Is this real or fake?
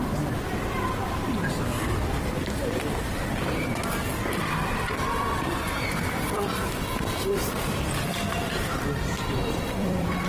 fake